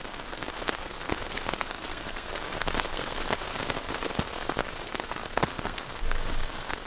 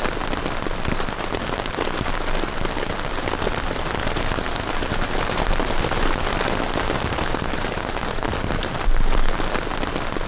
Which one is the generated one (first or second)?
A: first